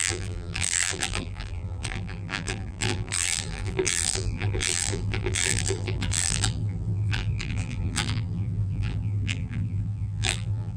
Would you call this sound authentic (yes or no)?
no